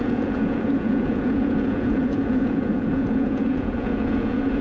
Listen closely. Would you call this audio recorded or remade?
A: remade